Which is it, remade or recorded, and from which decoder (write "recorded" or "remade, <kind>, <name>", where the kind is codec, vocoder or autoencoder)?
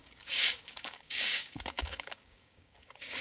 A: remade, codec, DAC